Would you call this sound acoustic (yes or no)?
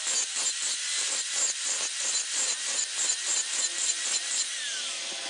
yes